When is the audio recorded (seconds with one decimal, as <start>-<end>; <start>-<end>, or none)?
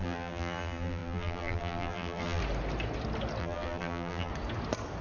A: 2.4-3.4; 4.3-5.0